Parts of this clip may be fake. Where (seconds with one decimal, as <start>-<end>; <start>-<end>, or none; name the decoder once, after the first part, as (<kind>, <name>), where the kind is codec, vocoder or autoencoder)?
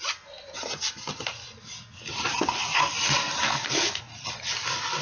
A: 3.4-4.0 (codec, SNAC)